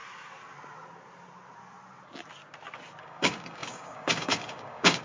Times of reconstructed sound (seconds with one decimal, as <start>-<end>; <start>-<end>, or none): 3.0-5.0